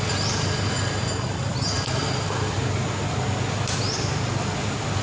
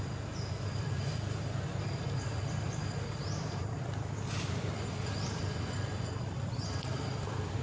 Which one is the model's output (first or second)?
second